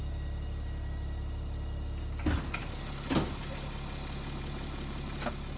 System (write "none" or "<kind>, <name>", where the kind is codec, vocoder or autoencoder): none